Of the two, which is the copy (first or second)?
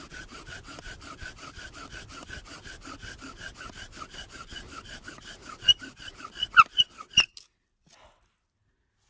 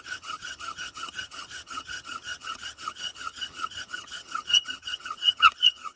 second